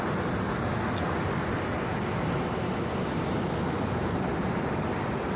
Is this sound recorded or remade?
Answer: recorded